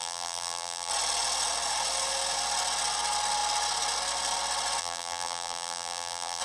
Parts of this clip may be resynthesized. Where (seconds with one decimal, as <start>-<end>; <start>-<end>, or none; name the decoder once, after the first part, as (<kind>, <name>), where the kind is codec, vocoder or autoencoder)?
0.0-0.9 (vocoder, BigVGAN v2); 4.8-6.4